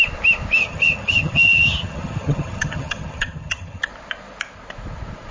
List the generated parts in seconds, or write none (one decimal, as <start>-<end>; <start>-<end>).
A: 0.6-3.8